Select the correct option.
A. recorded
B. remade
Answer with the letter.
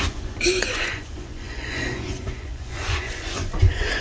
B